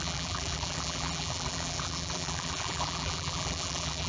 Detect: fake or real fake